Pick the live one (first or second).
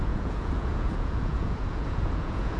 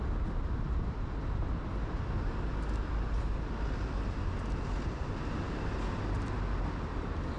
second